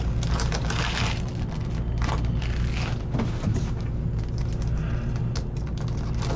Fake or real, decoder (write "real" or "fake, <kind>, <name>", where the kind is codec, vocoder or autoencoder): real